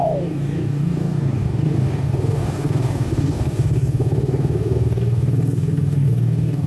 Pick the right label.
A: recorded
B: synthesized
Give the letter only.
B